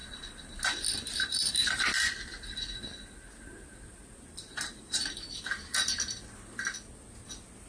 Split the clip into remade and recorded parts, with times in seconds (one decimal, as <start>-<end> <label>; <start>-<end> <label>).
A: 0.0-7.7 recorded